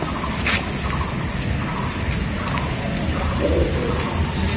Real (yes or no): yes